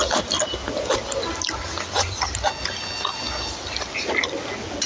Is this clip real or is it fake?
real